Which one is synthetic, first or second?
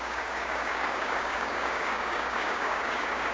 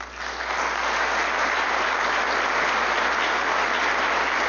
first